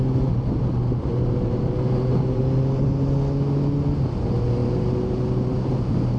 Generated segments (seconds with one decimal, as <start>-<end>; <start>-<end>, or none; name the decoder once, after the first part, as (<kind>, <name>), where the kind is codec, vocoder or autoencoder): 1.1-2.4 (vocoder, BigVGAN v2)